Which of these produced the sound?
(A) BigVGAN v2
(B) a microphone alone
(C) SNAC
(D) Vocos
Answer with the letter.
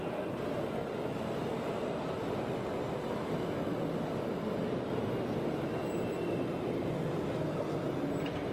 B